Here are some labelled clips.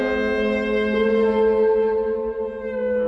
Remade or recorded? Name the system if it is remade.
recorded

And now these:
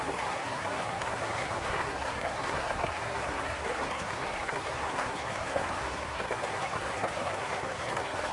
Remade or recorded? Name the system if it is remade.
remade, codec, SNAC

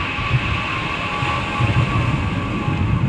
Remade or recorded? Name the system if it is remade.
recorded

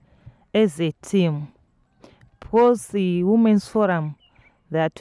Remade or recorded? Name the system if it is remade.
recorded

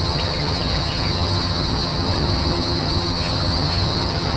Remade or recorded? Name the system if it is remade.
remade, vocoder, HiFi-GAN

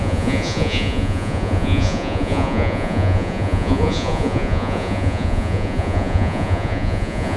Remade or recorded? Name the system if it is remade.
remade, vocoder, Vocos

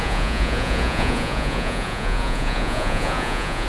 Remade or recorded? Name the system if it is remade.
remade, vocoder, Vocos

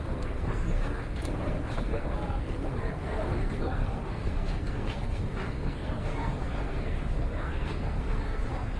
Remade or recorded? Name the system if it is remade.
remade, codec, SNAC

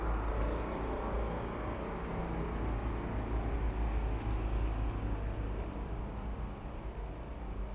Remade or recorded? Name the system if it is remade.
recorded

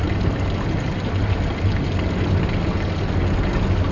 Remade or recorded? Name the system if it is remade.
recorded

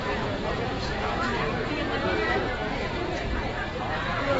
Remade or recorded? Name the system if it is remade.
remade, vocoder, Vocos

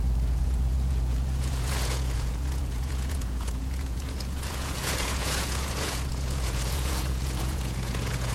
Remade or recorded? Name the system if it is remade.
remade, vocoder, Vocos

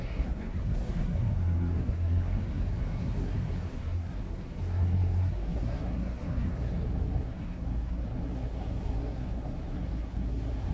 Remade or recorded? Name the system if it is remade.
remade, codec, SNAC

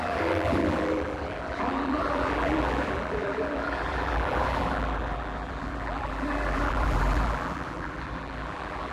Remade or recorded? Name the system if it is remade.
remade, vocoder, BigVGAN v2